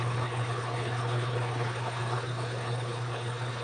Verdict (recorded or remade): remade